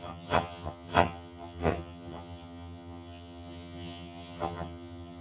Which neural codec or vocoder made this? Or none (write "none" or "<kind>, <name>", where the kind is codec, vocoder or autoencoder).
vocoder, HiFi-GAN